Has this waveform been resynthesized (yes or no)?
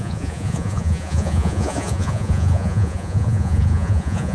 yes